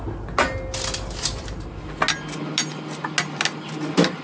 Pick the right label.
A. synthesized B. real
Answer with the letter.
B